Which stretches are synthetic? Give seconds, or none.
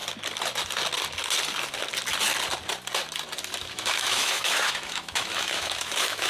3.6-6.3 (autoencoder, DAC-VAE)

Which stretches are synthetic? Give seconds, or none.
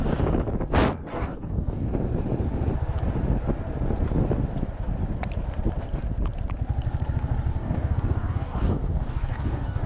1.1-1.9 (codec, DAC); 7.5-9.9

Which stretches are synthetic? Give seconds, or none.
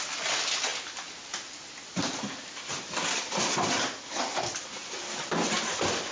none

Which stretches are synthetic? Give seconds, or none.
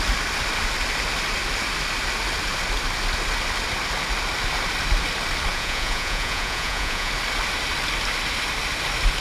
5.5-7.1 (vocoder, Vocos)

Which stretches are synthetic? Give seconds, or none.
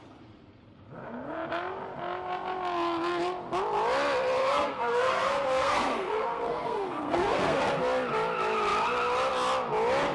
4.4-7.6 (codec, SNAC)